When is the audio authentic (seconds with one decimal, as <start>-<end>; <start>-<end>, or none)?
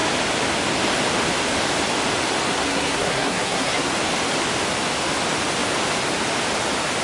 0.0-2.5; 3.9-7.0